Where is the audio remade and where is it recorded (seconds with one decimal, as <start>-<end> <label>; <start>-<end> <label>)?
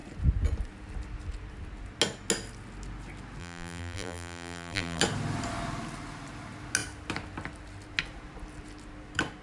0.0-3.4 recorded; 3.4-5.0 remade; 5.0-9.4 recorded